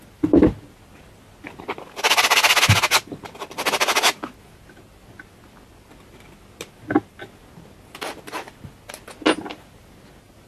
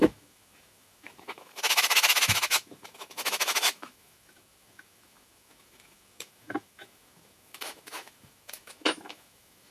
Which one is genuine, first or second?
first